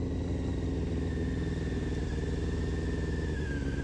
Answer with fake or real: real